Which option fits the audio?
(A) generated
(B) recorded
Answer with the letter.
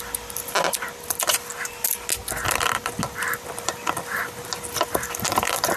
B